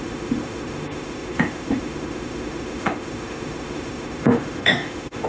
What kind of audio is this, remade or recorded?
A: remade